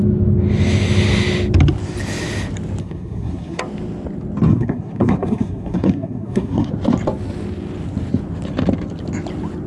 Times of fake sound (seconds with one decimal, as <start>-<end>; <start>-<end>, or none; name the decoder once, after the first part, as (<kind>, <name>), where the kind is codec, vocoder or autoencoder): 2.8-3.6 (codec, SNAC); 4.5-6.7